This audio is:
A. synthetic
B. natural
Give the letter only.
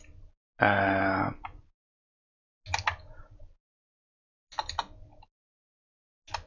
B